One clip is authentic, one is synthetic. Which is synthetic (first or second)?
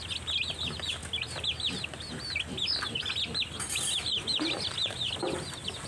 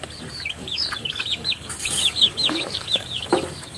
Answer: second